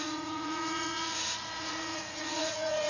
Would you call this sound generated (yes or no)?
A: yes